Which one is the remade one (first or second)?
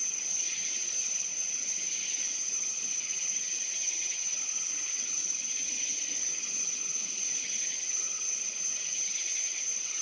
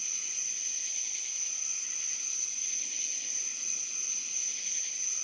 first